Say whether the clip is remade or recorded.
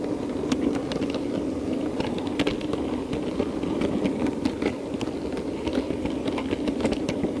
recorded